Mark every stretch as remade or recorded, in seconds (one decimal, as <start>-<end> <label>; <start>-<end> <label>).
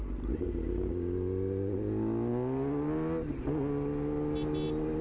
0.0-5.0 recorded